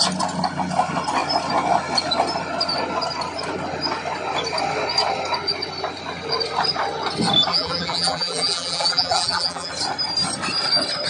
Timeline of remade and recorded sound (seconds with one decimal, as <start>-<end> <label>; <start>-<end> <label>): 0.0-7.5 recorded; 7.5-9.7 remade; 9.7-11.1 recorded